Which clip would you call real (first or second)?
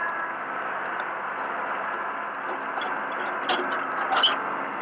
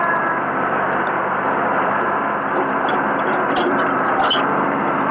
first